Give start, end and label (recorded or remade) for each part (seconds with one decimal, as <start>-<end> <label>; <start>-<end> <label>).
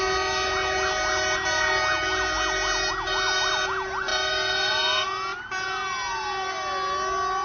0.0-7.4 recorded